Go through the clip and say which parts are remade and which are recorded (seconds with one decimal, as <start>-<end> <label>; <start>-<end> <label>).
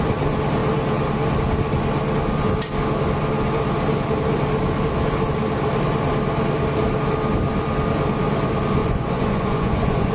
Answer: 0.0-8.8 recorded; 8.8-10.1 remade